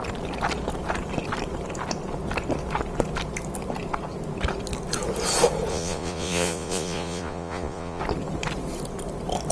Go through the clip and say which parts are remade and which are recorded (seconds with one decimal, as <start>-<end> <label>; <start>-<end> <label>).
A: 0.0-5.7 recorded; 5.7-8.0 remade; 8.0-9.5 recorded